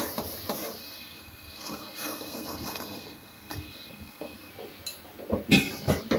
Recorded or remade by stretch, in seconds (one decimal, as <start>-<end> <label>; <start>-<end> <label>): 0.0-0.8 recorded; 0.8-4.5 remade; 4.5-6.2 recorded